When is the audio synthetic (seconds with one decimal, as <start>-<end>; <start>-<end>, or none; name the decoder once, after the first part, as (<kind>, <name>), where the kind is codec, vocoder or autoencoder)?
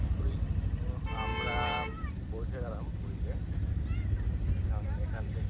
none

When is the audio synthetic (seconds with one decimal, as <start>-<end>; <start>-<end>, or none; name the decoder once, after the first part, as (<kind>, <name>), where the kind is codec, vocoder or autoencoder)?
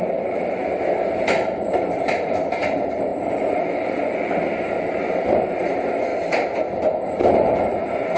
0.0-0.6 (vocoder, BigVGAN v2); 1.1-6.1; 7.0-8.2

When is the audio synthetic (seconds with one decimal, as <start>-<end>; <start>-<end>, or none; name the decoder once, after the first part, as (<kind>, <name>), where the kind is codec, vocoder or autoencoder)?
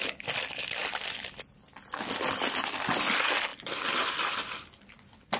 0.8-2.3 (vocoder, BigVGAN v2); 3.5-4.3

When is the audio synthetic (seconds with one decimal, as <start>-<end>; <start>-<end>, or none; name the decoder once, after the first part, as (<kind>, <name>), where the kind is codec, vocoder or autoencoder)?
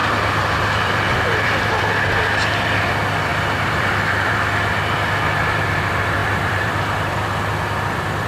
0.0-1.8 (vocoder, BigVGAN v2); 3.3-4.3; 6.2-6.8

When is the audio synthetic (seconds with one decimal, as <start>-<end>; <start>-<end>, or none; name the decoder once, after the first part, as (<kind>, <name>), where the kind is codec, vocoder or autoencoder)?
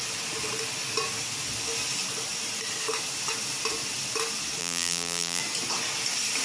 4.6-5.4 (vocoder, BigVGAN v2)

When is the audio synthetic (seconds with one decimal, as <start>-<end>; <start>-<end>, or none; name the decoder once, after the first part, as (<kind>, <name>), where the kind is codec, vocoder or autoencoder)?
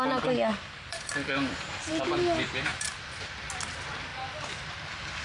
0.5-2.0 (vocoder, BigVGAN v2); 2.7-3.3; 4.1-4.7